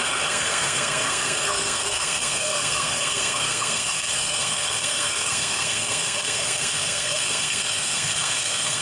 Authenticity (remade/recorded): remade